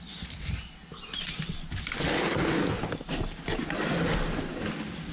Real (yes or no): yes